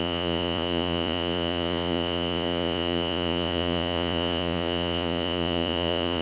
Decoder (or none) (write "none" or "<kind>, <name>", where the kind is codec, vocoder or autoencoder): vocoder, Vocos